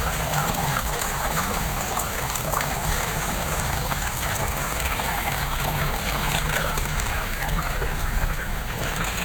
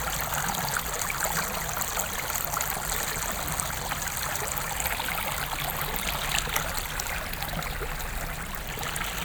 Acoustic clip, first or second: second